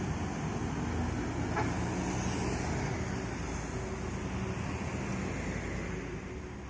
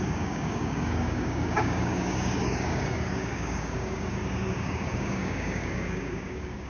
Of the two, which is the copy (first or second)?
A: second